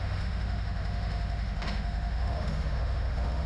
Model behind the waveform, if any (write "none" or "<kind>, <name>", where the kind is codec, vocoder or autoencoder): autoencoder, DAC-VAE